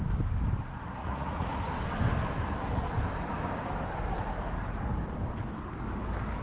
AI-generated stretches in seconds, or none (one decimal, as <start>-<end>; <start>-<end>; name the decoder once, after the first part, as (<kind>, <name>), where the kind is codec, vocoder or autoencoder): 1.0-1.7 (vocoder, Vocos)